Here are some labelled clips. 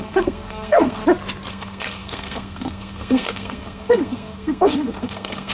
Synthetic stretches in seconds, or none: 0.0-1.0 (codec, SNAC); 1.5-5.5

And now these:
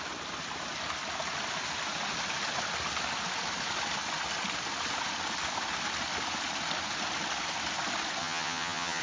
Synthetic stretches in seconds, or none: 8.2-9.0 (vocoder, HiFi-GAN)